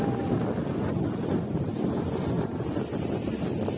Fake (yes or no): no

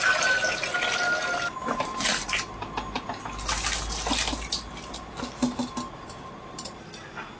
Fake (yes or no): no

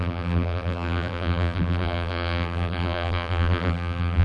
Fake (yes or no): yes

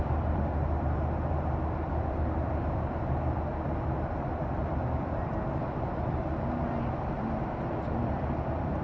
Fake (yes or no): yes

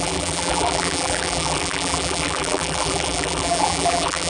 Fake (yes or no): yes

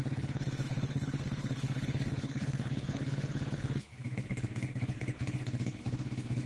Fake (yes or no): yes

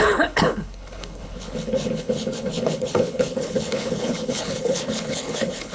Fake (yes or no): yes